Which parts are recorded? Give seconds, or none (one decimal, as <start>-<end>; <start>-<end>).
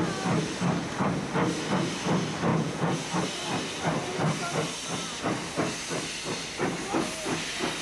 0.0-2.5; 3.1-7.8